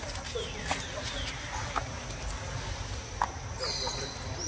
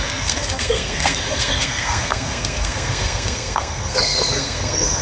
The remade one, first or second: second